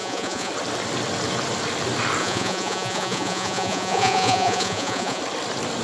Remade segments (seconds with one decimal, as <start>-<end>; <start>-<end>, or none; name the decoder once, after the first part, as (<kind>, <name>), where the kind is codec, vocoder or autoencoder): 0.0-0.5 (vocoder, Vocos); 2.2-5.2